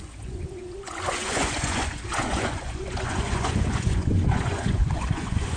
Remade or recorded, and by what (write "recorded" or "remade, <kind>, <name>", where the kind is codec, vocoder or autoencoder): remade, vocoder, Vocos